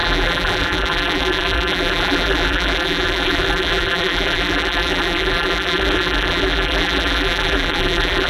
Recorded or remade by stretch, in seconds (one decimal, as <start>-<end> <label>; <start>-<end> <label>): 0.0-8.3 remade